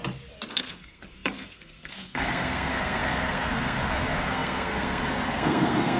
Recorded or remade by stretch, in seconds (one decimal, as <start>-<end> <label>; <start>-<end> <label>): 0.0-0.5 recorded; 0.5-6.0 remade

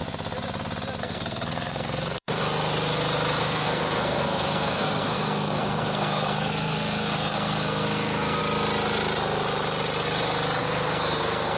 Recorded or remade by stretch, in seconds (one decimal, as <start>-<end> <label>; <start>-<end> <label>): 0.0-1.0 recorded; 1.0-2.4 remade; 2.4-3.4 recorded; 3.4-8.4 remade; 8.4-10.6 recorded; 10.6-11.6 remade

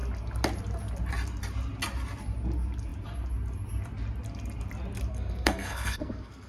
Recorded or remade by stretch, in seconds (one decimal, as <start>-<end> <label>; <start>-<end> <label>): 0.0-5.1 recorded; 5.1-6.5 remade

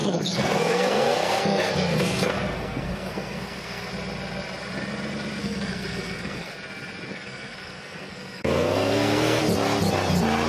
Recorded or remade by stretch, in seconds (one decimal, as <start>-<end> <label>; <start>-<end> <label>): 0.0-3.9 remade; 3.9-5.4 recorded; 5.4-6.5 remade; 6.5-7.1 recorded; 7.1-9.4 remade; 9.4-10.5 recorded

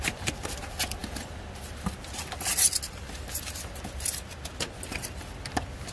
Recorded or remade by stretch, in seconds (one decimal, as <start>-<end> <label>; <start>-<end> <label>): 0.0-5.9 recorded